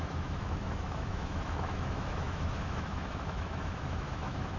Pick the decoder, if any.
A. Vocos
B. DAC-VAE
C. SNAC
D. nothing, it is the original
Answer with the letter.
B